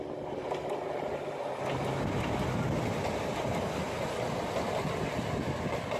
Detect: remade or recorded recorded